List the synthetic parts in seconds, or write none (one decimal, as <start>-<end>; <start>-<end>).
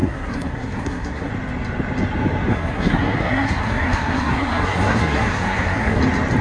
0.0-1.3; 2.5-6.0